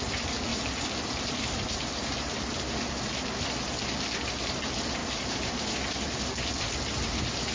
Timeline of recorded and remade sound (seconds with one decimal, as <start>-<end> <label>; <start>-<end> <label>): 0.0-5.0 recorded; 5.0-5.6 remade; 5.6-7.5 recorded